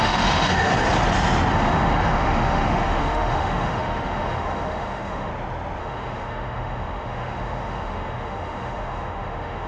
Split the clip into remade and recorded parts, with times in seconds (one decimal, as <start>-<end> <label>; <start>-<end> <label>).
0.0-0.7 remade; 0.7-1.5 recorded; 1.5-5.3 remade; 5.3-5.8 recorded; 5.8-9.7 remade